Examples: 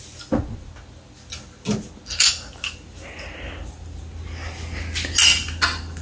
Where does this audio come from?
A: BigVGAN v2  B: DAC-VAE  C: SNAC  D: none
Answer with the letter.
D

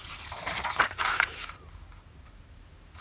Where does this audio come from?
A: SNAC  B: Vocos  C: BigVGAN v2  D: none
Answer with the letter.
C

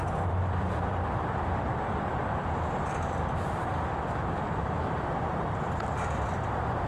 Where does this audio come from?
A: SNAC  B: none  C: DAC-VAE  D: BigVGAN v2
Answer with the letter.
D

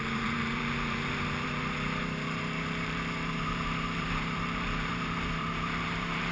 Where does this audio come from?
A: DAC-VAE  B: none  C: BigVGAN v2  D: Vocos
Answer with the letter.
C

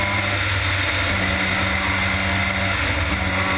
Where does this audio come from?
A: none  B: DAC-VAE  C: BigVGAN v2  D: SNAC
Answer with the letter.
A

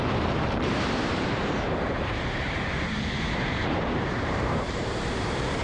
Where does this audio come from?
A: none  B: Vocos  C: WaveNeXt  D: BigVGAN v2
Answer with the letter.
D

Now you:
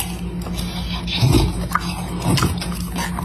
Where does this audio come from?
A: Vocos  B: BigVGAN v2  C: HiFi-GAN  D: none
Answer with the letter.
D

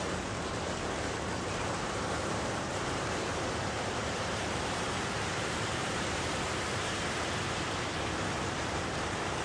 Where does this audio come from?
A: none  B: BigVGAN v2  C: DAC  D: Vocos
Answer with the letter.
B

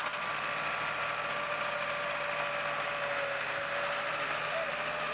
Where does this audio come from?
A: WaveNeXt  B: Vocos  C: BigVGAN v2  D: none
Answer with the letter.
D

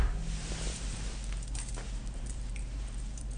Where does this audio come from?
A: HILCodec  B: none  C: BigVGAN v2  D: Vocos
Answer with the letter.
C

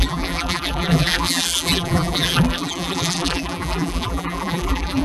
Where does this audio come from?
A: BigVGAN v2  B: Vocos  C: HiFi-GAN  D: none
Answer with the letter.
A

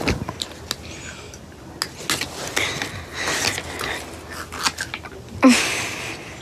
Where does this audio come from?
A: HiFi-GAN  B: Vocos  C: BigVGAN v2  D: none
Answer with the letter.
D